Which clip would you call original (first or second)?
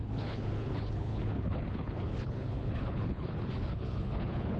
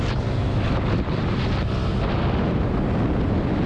second